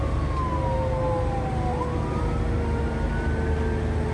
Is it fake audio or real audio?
real